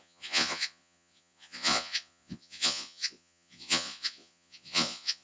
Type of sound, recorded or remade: remade